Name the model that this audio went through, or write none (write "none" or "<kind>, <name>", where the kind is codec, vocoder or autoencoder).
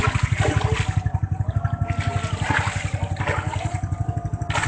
none